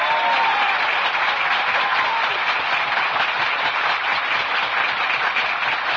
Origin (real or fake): real